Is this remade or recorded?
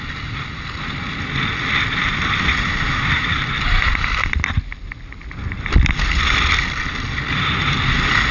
recorded